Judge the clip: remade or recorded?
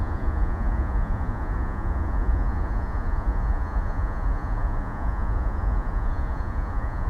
remade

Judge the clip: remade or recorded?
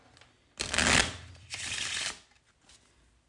recorded